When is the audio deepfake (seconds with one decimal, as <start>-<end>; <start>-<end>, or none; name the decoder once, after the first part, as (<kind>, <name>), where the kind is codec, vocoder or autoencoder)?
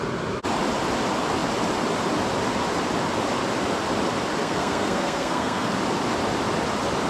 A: 4.4-5.7 (codec, SNAC)